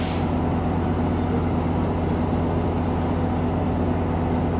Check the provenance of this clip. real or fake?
real